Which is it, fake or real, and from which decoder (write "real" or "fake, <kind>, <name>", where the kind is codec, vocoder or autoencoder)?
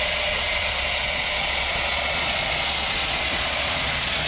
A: fake, vocoder, Vocos